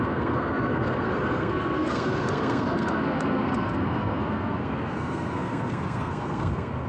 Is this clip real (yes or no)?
no